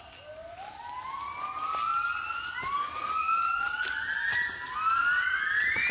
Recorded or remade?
recorded